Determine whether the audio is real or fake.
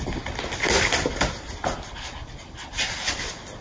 real